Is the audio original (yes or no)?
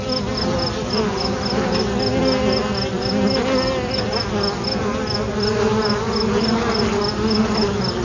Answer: yes